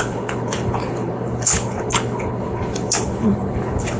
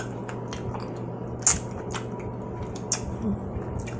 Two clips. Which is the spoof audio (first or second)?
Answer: first